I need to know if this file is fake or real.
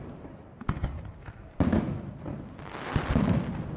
real